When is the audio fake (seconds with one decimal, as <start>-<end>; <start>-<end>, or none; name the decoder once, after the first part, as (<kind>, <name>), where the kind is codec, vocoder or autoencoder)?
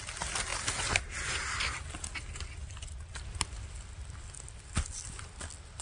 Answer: none